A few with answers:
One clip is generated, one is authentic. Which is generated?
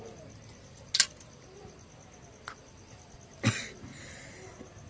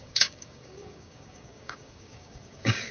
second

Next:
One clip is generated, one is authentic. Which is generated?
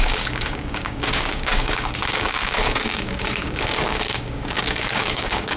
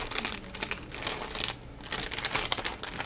first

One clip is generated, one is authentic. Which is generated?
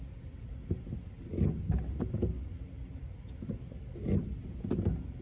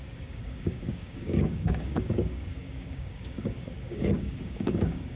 second